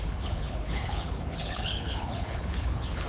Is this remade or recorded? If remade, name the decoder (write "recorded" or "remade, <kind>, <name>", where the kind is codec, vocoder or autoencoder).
remade, codec, HILCodec